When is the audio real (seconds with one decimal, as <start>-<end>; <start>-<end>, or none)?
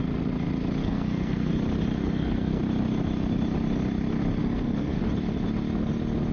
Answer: 0.0-0.8; 1.5-2.0; 2.6-4.4; 5.0-6.3